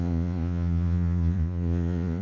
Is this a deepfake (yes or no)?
yes